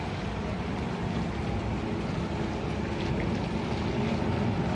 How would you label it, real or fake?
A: real